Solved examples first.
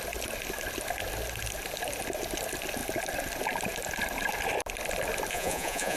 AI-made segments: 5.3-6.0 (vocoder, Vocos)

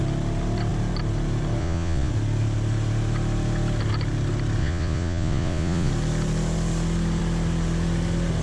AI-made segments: 1.6-2.1 (vocoder, Vocos); 4.6-5.9

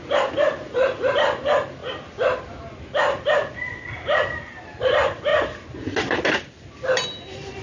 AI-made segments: none

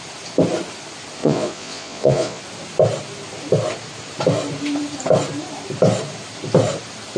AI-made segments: 1.2-2.4 (vocoder, Vocos)

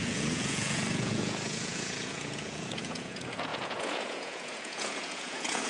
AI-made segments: 0.0-5.7 (vocoder, Vocos)

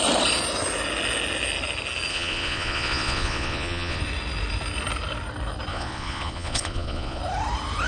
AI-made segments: 2.1-4.0 (vocoder, Vocos); 5.7-7.2